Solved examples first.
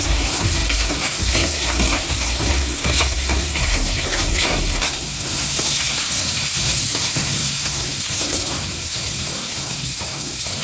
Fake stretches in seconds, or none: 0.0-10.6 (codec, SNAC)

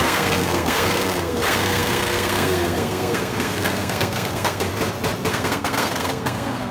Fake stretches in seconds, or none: 0.0-4.7 (codec, SNAC); 5.3-6.7

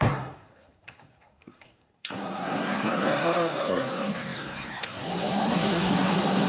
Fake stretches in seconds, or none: 0.0-6.5 (codec, SNAC)

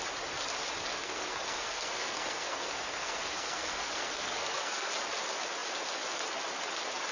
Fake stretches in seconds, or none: 0.9-4.9 (codec, SNAC)

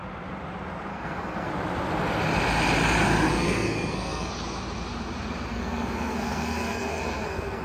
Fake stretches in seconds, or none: 0.9-1.5 (codec, SNAC); 3.3-4.3; 5.5-7.6